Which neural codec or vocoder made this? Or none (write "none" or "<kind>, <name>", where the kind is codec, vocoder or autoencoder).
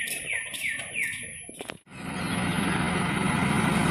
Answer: none